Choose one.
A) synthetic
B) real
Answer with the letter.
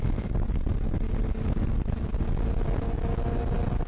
B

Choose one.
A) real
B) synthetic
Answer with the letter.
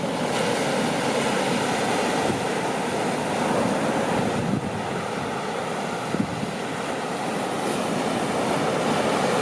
A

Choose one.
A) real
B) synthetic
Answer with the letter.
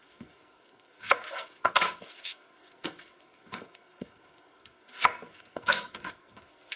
B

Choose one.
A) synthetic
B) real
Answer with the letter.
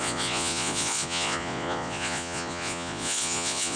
A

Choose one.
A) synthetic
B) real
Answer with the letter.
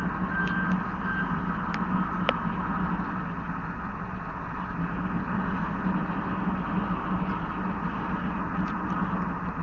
B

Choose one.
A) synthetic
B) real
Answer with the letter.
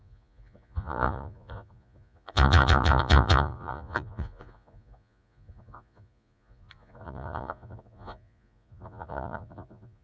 A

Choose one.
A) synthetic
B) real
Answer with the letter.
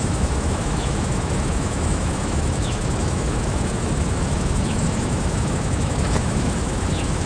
A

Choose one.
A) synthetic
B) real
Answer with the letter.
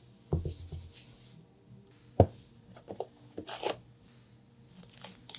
B